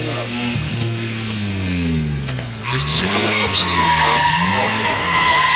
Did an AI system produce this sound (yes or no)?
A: yes